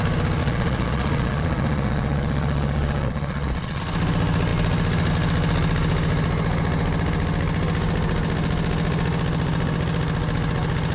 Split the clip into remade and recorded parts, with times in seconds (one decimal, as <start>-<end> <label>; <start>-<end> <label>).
0.0-0.4 recorded; 0.4-3.8 remade; 3.8-10.9 recorded